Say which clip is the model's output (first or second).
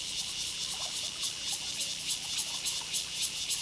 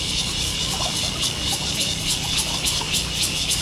second